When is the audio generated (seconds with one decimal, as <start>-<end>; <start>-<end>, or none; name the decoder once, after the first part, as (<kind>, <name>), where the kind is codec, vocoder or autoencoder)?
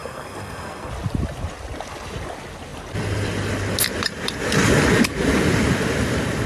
0.0-0.9 (codec, SNAC)